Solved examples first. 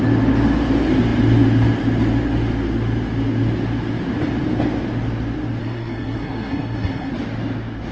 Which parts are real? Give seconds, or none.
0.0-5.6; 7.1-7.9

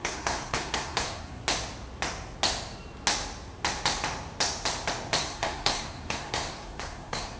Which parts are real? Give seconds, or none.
1.4-5.2